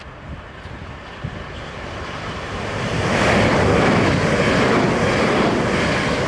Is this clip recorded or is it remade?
recorded